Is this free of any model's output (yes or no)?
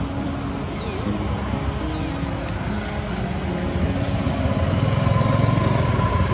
yes